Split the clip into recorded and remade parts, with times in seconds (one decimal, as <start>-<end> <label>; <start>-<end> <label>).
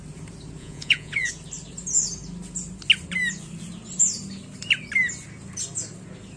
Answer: 0.0-0.6 recorded; 0.6-1.3 remade; 1.3-6.4 recorded